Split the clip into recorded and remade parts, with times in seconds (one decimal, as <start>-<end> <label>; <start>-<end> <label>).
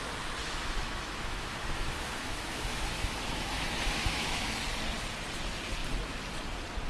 0.0-0.4 recorded; 0.4-4.5 remade; 4.5-6.9 recorded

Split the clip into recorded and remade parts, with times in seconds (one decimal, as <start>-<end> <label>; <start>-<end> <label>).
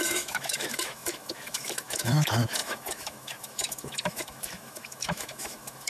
0.0-5.9 remade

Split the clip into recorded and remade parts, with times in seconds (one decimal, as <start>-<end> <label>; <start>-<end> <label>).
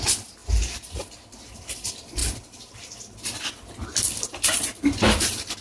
0.0-5.6 recorded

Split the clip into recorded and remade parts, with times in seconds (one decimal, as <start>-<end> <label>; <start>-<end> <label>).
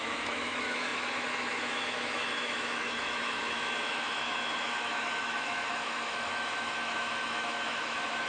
0.0-8.3 remade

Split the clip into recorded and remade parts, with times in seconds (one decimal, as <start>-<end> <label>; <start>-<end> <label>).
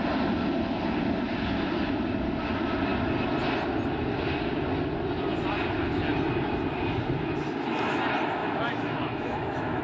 0.0-8.4 recorded; 8.4-9.8 remade